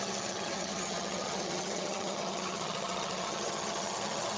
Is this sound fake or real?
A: fake